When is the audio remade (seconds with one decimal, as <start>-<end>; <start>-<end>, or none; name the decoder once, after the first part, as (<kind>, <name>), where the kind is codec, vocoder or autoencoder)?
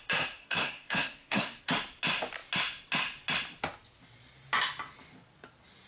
0.4-1.7 (codec, SNAC)